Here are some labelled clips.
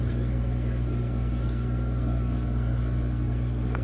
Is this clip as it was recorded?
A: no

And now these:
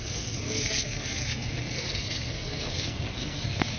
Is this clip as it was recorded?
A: no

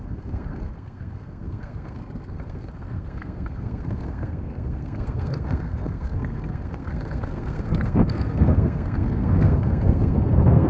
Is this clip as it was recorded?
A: no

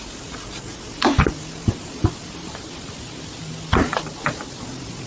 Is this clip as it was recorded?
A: yes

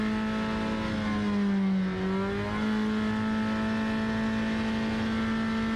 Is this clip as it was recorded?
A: yes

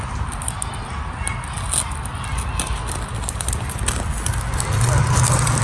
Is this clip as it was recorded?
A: yes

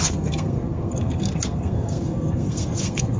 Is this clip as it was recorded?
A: no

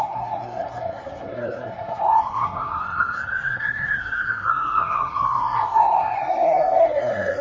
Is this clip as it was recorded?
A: no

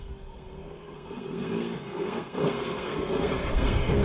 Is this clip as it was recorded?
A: no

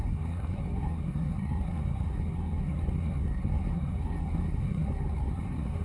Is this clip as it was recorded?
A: no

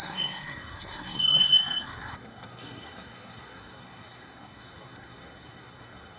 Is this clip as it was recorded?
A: no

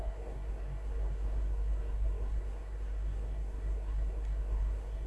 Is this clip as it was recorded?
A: no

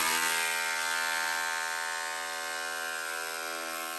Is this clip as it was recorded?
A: yes